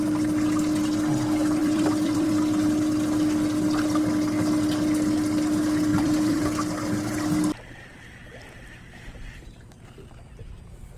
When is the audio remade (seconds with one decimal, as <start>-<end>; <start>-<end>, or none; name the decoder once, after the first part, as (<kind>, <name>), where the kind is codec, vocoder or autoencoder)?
1.6-2.3 (vocoder, BigVGAN v2); 5.9-6.4